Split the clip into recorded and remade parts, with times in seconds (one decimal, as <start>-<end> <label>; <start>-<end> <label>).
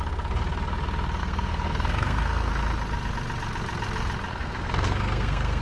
0.0-1.2 recorded; 1.2-2.5 remade; 2.5-4.3 recorded; 4.3-5.6 remade